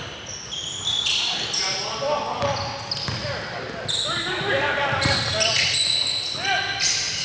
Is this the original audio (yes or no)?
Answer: yes